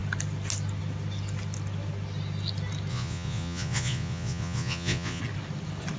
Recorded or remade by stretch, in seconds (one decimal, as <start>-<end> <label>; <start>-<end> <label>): 0.0-2.9 recorded; 2.9-5.2 remade; 5.2-6.0 recorded